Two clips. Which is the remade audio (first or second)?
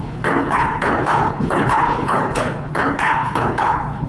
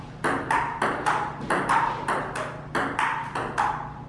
first